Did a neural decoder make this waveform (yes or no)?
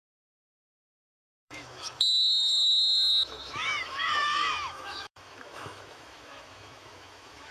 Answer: yes